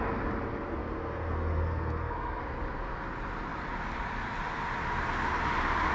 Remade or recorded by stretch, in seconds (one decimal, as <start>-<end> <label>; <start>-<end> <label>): 0.0-0.8 recorded; 0.8-2.4 remade; 2.4-5.9 recorded